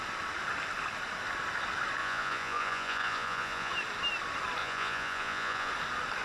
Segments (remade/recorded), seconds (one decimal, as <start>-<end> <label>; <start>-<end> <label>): 0.0-2.0 recorded; 2.0-3.7 remade; 3.7-4.6 recorded; 4.6-5.7 remade; 5.7-6.2 recorded